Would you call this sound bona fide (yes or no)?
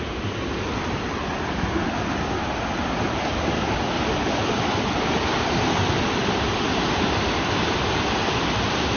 yes